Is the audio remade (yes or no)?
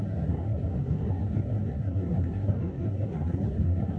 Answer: yes